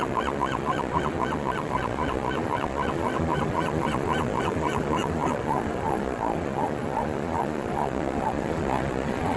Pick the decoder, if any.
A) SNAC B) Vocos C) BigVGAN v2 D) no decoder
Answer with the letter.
B